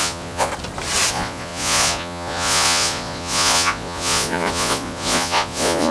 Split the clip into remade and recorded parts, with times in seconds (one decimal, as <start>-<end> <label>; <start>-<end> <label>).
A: 0.0-0.5 remade; 0.5-1.1 recorded; 1.1-5.9 remade